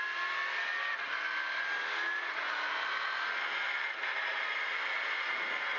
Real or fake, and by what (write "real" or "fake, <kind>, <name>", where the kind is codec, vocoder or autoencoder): real